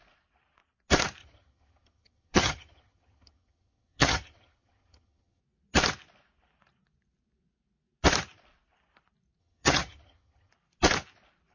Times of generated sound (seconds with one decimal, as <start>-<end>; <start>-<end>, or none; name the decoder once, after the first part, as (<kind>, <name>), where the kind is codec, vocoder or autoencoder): 1.2-5.4 (vocoder, HiFi-GAN); 9.4-10.5